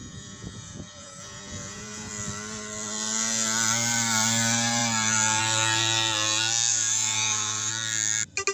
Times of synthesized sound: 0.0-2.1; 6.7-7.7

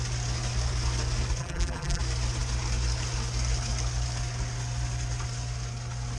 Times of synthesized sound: 1.4-2.0

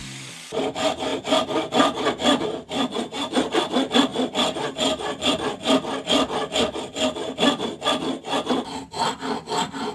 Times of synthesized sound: 0.0-0.6

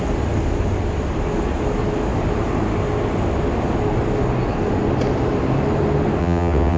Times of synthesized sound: 6.2-6.8

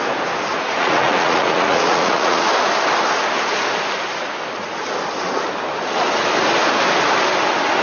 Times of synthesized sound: 0.5-2.5

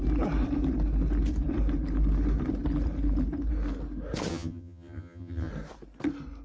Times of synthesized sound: 4.3-5.5